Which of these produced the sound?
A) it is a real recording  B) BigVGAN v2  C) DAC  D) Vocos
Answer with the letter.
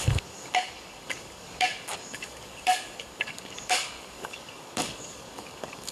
C